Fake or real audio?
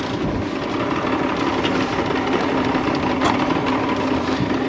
real